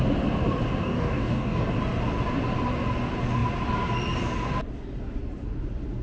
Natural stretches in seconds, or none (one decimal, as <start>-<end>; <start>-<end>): 0.0-0.8; 1.7-6.0